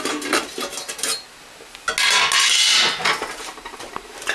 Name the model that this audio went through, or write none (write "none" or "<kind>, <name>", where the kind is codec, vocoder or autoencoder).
none